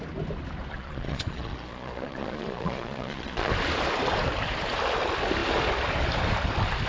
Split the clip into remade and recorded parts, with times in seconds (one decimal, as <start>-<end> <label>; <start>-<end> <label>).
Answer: 0.0-0.7 recorded; 0.7-3.5 remade; 3.5-6.9 recorded